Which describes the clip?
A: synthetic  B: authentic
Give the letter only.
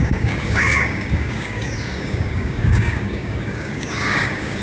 A